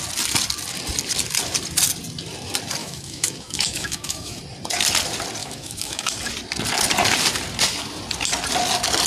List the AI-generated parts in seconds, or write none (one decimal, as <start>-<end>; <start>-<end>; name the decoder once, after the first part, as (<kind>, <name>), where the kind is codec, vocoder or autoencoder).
2.8-4.4 (autoencoder, DAC-VAE); 5.4-6.1